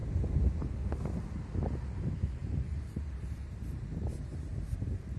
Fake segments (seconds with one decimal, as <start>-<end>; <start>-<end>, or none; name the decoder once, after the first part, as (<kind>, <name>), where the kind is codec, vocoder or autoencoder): 2.4-5.2 (vocoder, BigVGAN v2)